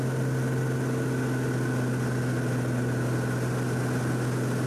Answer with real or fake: real